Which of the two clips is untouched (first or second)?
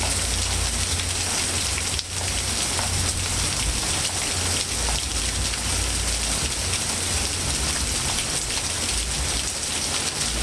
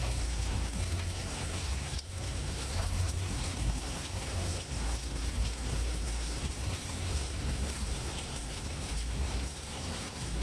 first